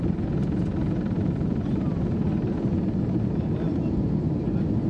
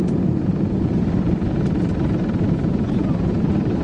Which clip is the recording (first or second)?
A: first